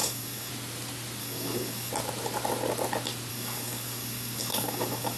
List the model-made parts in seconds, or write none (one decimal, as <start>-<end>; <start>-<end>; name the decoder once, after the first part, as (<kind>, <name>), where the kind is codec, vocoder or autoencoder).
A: 0.0-0.5 (codec, DAC); 1.2-1.9; 3.3-5.2